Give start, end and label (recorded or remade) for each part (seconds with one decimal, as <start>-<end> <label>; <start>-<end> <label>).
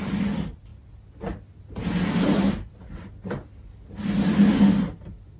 0.0-5.4 recorded